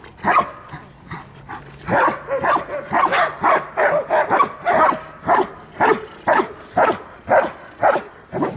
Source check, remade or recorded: recorded